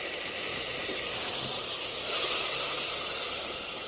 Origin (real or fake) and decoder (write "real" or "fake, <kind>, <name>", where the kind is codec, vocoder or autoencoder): real